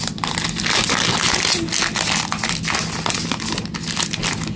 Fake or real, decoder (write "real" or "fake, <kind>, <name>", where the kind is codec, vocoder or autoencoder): real